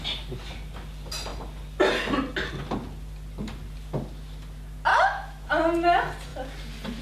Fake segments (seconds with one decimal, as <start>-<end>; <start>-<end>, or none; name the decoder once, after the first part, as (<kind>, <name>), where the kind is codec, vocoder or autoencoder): 4.9-5.5 (autoencoder, DAC-VAE)